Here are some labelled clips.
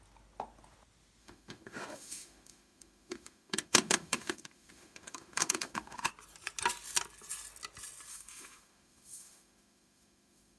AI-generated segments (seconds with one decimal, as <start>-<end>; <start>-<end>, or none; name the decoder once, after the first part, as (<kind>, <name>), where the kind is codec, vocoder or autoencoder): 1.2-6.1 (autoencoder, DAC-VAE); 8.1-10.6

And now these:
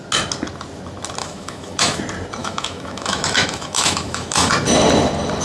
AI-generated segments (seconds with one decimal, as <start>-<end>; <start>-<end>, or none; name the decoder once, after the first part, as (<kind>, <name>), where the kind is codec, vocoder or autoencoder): 1.2-2.0 (autoencoder, DAC-VAE); 2.4-4.5

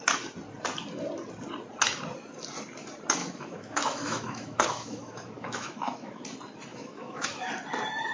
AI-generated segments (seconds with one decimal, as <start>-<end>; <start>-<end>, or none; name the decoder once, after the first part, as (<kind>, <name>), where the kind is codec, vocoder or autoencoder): 3.2-6.2 (autoencoder, DAC-VAE); 6.7-7.5

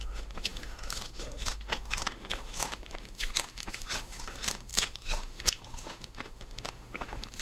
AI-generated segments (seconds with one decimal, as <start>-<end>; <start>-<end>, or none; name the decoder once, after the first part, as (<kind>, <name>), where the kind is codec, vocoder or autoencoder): 0.0-7.4 (autoencoder, DAC-VAE)

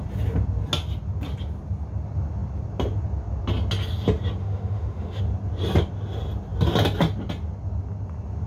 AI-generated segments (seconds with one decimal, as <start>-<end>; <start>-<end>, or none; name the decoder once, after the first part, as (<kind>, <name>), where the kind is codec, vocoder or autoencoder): 4.4-5.2 (autoencoder, DAC-VAE)